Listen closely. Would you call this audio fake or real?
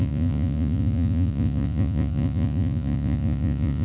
fake